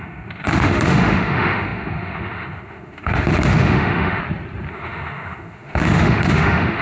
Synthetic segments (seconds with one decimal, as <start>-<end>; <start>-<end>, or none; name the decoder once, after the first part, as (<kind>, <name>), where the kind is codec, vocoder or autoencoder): 0.0-4.2 (autoencoder, DAC-VAE); 4.7-6.8